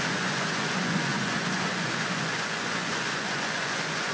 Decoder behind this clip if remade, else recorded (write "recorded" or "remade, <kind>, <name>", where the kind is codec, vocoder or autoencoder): remade, vocoder, Vocos